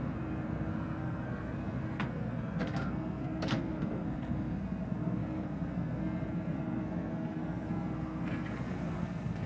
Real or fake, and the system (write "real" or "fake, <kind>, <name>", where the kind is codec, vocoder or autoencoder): fake, codec, SNAC